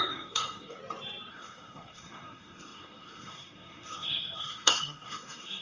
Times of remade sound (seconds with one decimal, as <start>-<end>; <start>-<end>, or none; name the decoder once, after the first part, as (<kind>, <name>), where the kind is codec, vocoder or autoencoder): 0.0-0.8 (codec, SNAC); 1.3-5.6